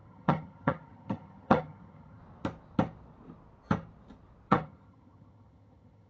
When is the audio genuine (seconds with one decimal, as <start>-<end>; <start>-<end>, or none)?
2.2-4.5